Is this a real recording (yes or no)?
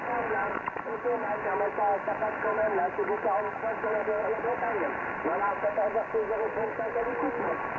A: yes